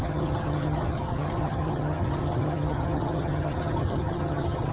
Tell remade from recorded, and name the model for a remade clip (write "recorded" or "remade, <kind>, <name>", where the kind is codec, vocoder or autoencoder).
remade, vocoder, HiFi-GAN